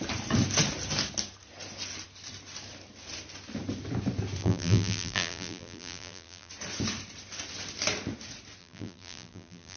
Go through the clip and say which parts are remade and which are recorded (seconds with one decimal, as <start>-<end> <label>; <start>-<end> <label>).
0.0-4.4 recorded; 4.4-6.5 remade; 6.5-8.6 recorded; 8.6-9.8 remade